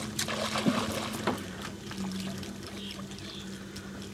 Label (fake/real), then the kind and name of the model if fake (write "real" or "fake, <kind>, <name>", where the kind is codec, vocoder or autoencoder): real